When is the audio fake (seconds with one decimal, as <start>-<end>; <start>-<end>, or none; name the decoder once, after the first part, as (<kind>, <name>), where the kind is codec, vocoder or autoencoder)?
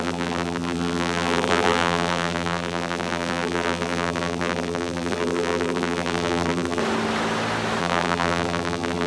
0.0-6.8 (vocoder, BigVGAN v2); 7.8-9.1